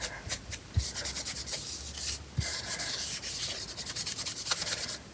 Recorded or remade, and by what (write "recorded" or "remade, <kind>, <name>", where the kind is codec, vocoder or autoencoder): recorded